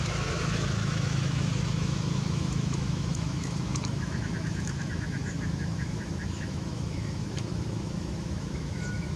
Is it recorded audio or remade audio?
remade